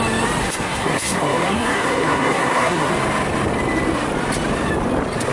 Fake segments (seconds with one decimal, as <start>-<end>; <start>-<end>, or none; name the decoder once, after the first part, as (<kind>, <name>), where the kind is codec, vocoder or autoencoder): 0.4-2.9 (codec, SNAC)